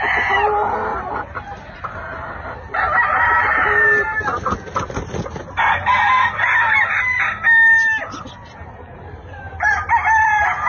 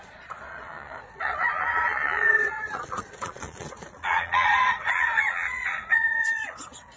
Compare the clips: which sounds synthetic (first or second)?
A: second